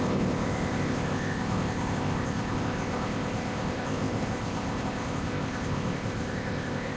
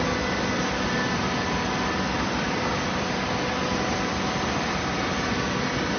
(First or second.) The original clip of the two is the second